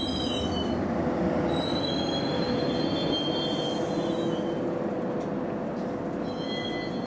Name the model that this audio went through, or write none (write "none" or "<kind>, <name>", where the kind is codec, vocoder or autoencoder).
none